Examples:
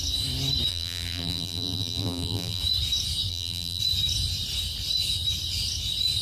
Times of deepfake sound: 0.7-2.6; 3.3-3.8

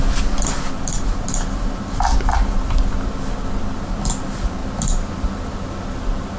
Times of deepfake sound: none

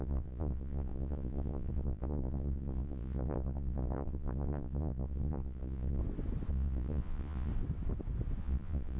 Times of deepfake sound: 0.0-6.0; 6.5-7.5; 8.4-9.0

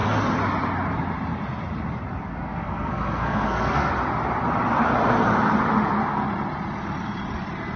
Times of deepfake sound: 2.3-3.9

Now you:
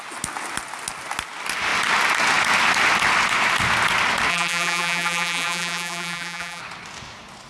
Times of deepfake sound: 4.3-6.6

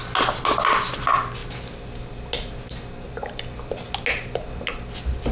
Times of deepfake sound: none

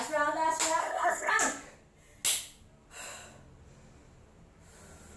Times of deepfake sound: 0.8-1.3

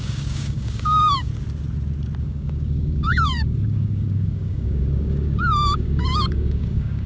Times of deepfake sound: 0.0-1.3; 2.2-7.1